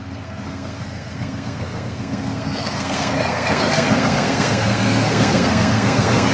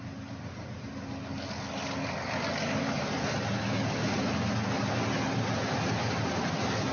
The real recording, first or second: second